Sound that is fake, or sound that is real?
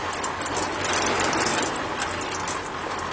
real